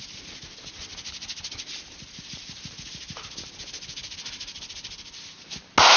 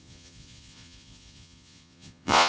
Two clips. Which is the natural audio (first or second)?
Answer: first